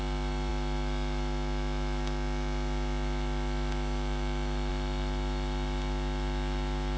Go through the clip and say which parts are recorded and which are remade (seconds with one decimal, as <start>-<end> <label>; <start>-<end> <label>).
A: 0.0-7.0 remade